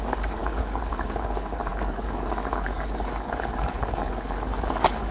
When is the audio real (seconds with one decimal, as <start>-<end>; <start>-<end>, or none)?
none